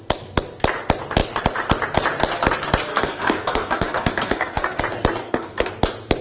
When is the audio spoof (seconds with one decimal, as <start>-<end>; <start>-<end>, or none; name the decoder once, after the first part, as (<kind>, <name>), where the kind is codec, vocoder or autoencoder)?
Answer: 2.9-4.8 (codec, SNAC); 5.2-5.7